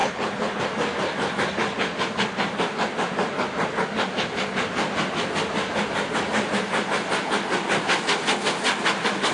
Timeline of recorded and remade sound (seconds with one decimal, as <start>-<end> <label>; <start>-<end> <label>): 0.0-0.6 remade; 0.6-9.3 recorded